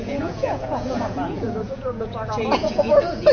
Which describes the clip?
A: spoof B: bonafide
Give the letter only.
A